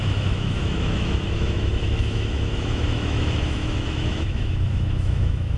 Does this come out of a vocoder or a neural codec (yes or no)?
yes